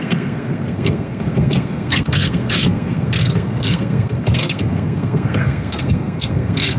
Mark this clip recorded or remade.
remade